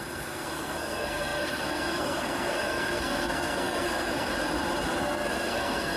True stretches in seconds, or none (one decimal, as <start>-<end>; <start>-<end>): 4.3-5.0